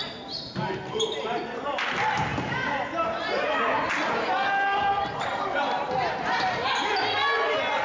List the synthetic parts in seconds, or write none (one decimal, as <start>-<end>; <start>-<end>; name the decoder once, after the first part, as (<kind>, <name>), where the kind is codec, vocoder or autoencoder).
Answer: none